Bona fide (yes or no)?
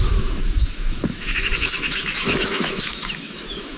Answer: no